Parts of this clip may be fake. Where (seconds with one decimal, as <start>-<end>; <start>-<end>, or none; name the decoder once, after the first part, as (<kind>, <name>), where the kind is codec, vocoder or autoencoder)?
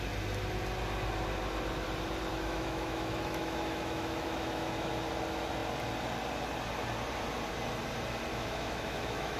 2.3-4.9 (autoencoder, DAC-VAE); 8.3-9.4